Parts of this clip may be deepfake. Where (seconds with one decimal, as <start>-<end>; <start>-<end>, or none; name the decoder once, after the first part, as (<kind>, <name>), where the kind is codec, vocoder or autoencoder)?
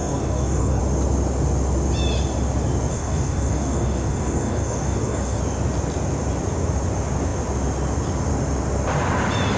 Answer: 0.0-0.8 (codec, DAC); 2.9-5.4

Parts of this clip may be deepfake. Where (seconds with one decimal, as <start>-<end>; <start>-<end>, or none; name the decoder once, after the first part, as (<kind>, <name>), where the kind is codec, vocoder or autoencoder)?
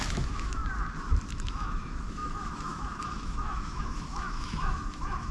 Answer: 0.0-0.6 (autoencoder, DAC-VAE); 1.3-5.3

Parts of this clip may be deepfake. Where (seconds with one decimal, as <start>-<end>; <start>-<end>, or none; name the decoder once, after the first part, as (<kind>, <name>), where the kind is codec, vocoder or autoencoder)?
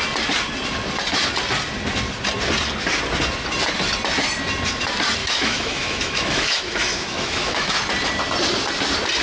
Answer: 5.2-7.7 (autoencoder, DAC-VAE)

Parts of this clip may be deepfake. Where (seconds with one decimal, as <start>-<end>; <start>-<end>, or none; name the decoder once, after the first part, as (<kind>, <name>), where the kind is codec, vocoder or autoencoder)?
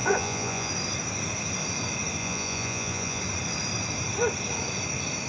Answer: 0.0-0.7 (vocoder, Vocos); 2.2-3.2